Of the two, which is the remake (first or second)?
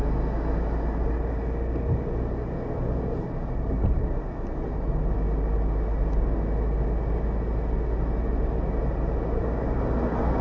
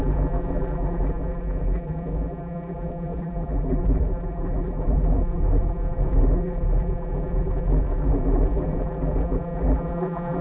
second